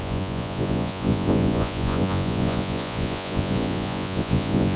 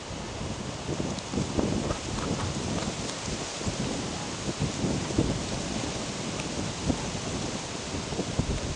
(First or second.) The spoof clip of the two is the first